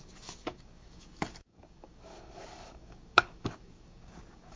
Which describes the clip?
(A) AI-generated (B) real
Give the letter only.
A